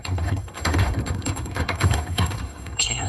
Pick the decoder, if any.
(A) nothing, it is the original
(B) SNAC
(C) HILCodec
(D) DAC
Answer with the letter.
B